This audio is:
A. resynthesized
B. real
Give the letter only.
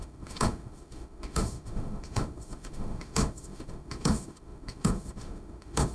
A